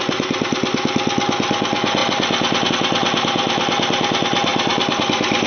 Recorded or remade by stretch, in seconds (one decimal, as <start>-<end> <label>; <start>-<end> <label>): 0.0-5.5 recorded